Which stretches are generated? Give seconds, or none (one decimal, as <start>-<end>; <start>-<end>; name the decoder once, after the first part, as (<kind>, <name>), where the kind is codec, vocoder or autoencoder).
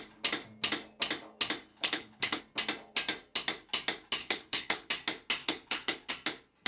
1.7-2.4 (codec, HILCodec); 4.2-4.9; 5.4-6.1